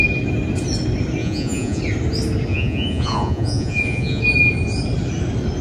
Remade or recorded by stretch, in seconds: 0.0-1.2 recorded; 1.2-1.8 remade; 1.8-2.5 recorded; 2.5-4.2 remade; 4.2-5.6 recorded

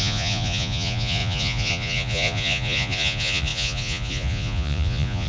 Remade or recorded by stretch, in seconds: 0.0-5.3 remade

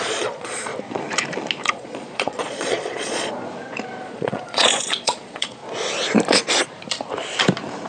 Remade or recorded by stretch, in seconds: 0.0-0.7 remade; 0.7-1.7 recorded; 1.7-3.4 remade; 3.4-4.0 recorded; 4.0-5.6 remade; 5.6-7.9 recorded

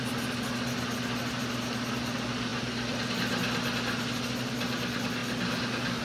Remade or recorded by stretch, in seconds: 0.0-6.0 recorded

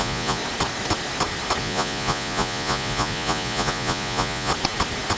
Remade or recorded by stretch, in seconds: 0.0-0.4 remade; 0.4-1.6 recorded; 1.6-4.5 remade; 4.5-5.2 recorded

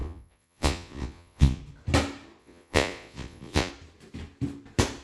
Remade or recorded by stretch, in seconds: 0.0-1.6 remade; 1.6-2.4 recorded; 2.4-3.7 remade; 3.7-5.0 recorded

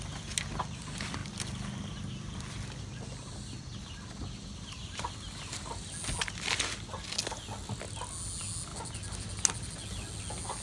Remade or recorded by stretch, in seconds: 0.0-10.6 recorded

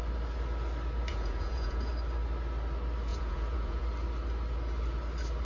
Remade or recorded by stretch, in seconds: 0.0-1.1 recorded; 1.1-1.9 remade; 1.9-3.1 recorded; 3.1-3.8 remade; 3.8-5.4 recorded